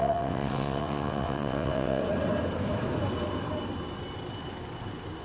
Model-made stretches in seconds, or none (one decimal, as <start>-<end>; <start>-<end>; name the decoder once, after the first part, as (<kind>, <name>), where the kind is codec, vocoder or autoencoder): 0.0-2.0 (vocoder, WaveNeXt)